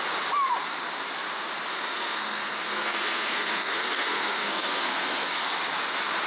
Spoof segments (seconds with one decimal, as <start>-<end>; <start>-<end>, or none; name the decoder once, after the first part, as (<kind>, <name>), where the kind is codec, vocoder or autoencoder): 1.7-5.5 (codec, SNAC)